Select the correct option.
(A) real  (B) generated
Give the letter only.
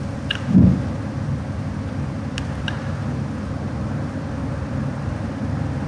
B